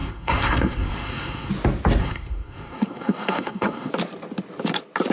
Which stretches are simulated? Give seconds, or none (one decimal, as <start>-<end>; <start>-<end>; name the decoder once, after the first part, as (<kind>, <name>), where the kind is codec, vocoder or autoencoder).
0.0-1.5 (codec, SNAC); 2.0-3.9